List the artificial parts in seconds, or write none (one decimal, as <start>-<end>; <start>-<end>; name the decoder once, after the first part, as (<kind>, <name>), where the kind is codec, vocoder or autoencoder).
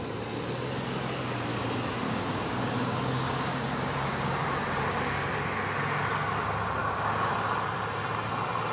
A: 1.5-5.3 (codec, DAC); 6.8-7.3